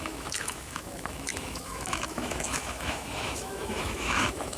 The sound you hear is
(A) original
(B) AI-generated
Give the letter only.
B